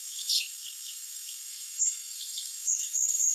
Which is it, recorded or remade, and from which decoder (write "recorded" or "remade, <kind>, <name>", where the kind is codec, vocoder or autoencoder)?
remade, codec, SNAC